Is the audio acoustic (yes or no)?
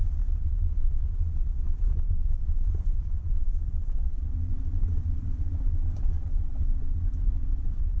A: no